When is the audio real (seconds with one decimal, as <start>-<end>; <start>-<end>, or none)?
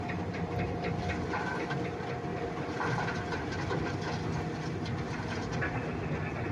0.0-2.3; 3.1-6.5